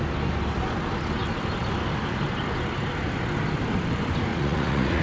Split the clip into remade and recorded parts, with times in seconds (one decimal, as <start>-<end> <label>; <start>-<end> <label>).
0.0-4.3 recorded; 4.3-5.0 remade